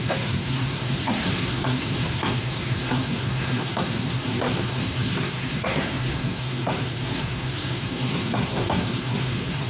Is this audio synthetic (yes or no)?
yes